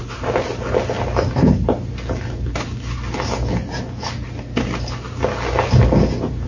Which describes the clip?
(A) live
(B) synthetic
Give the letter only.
A